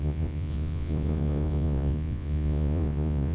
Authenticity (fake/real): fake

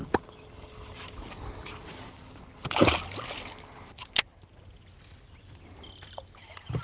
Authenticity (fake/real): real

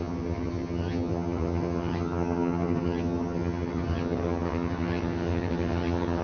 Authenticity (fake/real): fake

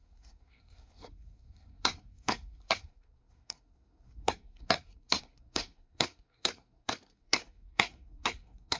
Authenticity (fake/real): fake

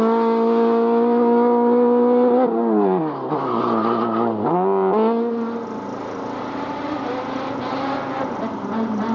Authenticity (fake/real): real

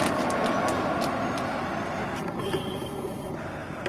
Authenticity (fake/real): real